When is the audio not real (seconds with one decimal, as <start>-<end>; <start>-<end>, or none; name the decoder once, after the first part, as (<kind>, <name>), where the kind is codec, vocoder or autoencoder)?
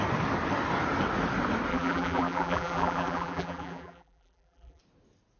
1.7-4.8 (vocoder, BigVGAN v2)